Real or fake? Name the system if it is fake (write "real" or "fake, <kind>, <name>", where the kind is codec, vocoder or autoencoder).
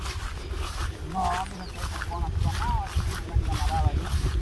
real